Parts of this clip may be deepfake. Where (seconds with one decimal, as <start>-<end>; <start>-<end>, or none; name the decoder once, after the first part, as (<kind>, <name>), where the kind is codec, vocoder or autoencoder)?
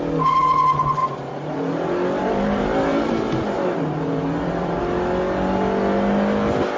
1.0-4.8 (vocoder, BigVGAN v2)